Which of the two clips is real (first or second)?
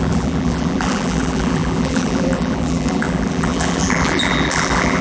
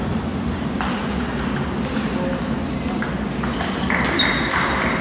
second